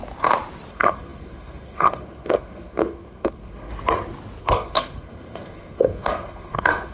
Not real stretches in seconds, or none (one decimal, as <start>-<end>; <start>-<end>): 0.7-3.7; 4.4-6.9